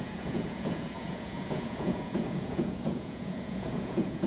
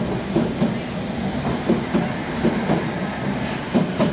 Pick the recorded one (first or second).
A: second